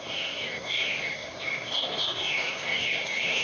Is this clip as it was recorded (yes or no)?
no